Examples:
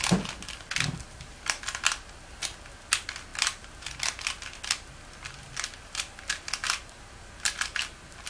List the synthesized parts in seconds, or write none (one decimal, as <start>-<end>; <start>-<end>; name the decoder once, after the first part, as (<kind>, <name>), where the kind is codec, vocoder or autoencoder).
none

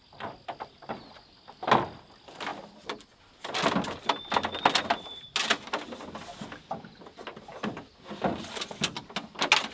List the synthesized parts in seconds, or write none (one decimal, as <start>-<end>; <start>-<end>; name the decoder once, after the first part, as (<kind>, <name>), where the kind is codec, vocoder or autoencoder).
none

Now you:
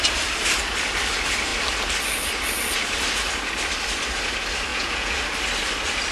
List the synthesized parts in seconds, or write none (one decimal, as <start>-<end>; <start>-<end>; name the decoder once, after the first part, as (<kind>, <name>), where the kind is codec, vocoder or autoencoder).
4.7-5.2 (vocoder, Vocos)

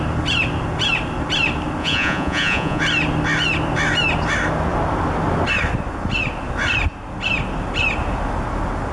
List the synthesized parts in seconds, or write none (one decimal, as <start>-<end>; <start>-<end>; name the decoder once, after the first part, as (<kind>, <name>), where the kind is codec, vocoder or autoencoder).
1.8-2.8 (vocoder, Vocos)